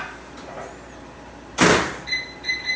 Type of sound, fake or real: real